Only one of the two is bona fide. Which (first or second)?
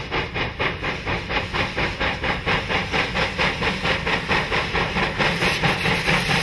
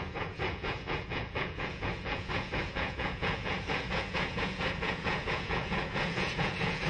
first